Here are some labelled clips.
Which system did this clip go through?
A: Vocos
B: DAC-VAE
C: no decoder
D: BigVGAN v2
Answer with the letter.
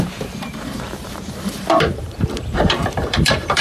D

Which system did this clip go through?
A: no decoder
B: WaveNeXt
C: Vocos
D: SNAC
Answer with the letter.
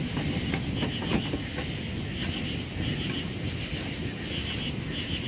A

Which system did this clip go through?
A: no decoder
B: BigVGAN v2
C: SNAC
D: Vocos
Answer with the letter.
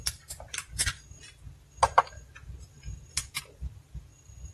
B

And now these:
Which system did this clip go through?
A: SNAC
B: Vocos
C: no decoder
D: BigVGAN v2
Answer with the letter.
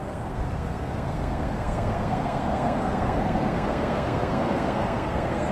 A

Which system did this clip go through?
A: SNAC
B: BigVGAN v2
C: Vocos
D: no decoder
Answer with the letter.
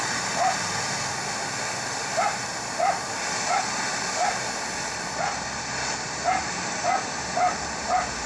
D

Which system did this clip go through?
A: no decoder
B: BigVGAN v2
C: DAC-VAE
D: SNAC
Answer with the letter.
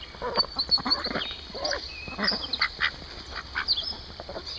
A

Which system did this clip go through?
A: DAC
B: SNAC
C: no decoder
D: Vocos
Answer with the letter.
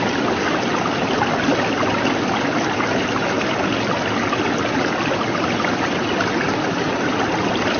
C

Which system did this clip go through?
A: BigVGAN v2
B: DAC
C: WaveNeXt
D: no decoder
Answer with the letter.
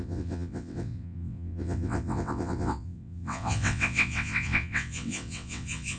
C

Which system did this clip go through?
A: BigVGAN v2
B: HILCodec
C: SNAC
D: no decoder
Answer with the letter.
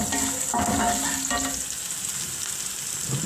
D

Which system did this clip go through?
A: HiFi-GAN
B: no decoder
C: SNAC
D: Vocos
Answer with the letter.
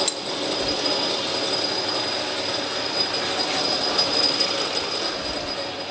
B